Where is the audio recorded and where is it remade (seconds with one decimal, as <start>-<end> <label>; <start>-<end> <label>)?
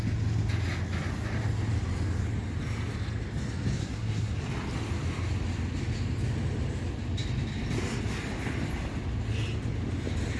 0.0-3.8 recorded; 3.8-4.4 remade; 4.4-10.4 recorded